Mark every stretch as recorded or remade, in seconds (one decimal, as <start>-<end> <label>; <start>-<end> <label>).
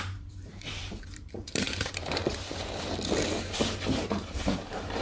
0.0-2.2 remade; 2.2-3.9 recorded; 3.9-5.0 remade